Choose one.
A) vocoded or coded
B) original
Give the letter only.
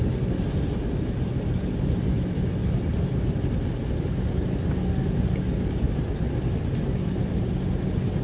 B